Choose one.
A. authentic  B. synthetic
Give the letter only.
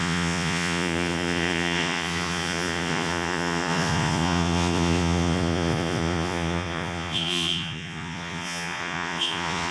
B